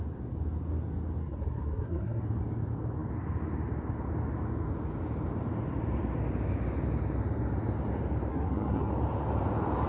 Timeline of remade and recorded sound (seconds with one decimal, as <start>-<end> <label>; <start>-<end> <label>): 0.0-1.2 recorded; 1.2-2.2 remade; 2.2-8.3 recorded; 8.3-8.9 remade; 8.9-9.9 recorded

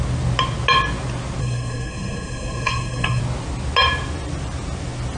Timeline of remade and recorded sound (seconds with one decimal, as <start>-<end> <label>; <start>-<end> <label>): 0.0-1.4 recorded; 1.4-3.2 remade; 3.2-5.2 recorded

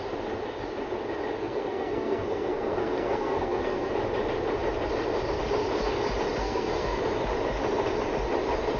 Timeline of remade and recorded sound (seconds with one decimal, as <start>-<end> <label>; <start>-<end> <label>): 0.0-1.4 recorded; 1.4-3.9 remade; 3.9-6.4 recorded; 6.4-7.0 remade; 7.0-8.8 recorded

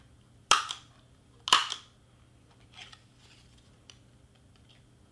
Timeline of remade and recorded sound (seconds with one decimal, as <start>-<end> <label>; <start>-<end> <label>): 0.0-5.1 recorded

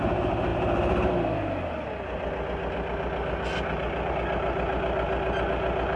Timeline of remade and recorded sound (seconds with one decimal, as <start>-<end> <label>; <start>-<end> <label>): 0.0-6.0 recorded